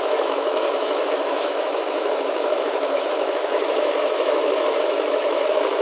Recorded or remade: remade